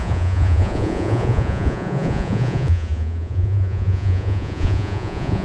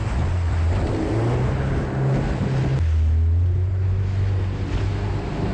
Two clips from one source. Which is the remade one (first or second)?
first